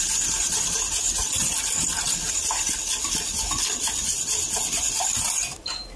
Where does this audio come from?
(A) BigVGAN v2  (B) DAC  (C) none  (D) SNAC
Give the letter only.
C